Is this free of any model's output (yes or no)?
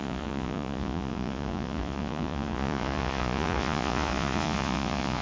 no